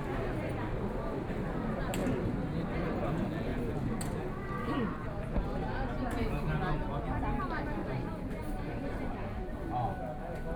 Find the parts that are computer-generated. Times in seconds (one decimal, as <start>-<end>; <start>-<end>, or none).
2.0-2.7; 7.8-9.1